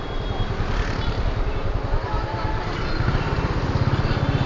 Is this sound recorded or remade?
recorded